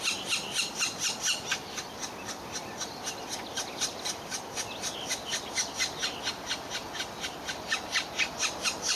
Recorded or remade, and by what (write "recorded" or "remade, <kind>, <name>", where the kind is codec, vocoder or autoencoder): recorded